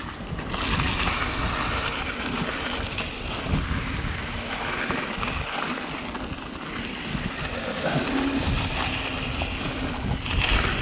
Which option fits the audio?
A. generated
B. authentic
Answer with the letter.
B